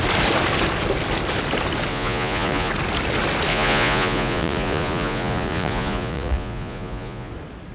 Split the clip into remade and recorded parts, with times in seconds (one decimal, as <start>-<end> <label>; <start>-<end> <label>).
0.0-1.9 recorded; 1.9-2.7 remade; 2.7-3.5 recorded; 3.5-7.3 remade; 7.3-7.7 recorded